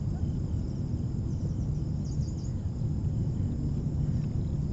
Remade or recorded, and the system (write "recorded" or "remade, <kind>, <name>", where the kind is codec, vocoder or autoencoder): recorded